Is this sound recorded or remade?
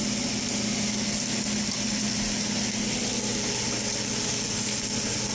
recorded